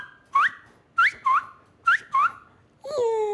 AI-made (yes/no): no